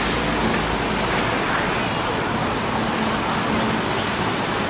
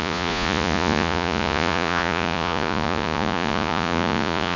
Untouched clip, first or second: first